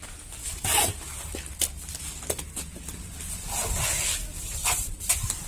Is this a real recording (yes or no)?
yes